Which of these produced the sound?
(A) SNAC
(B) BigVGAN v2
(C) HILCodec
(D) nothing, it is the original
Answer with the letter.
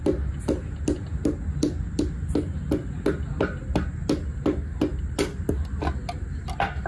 D